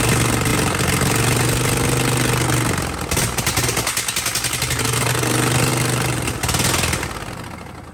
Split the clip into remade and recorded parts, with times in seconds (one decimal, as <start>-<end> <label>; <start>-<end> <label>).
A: 0.0-7.9 recorded